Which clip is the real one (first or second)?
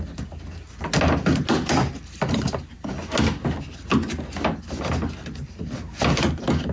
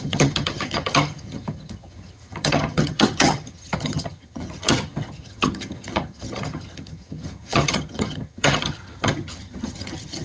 first